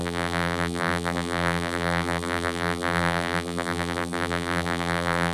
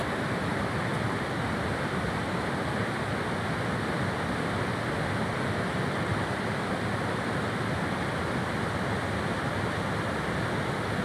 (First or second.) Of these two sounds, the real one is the second